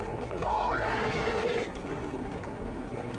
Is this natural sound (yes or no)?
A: no